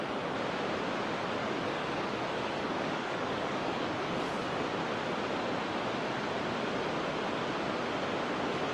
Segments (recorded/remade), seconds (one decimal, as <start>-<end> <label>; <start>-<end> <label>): 0.0-1.4 recorded; 1.4-4.5 remade; 4.5-8.7 recorded